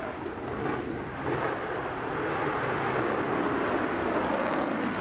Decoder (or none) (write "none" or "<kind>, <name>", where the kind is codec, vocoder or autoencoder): none